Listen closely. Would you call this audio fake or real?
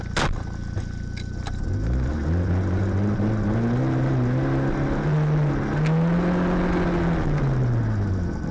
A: real